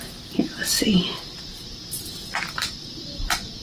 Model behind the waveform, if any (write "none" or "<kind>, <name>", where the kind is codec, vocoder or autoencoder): none